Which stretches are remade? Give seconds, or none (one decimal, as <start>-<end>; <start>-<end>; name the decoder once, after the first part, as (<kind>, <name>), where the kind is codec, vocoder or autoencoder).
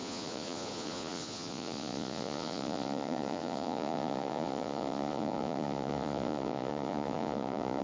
0.0-7.8 (vocoder, Vocos)